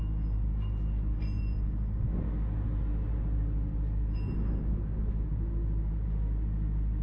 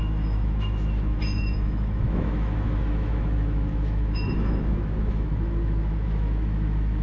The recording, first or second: first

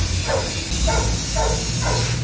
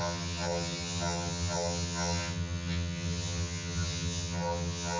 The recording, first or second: first